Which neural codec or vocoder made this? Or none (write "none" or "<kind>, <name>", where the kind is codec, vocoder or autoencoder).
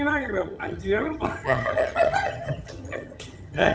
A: vocoder, HiFi-GAN